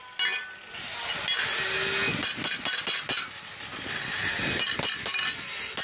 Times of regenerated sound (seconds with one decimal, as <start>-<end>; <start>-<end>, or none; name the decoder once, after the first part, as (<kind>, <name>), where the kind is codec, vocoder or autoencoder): none